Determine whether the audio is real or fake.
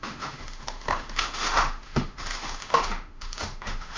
fake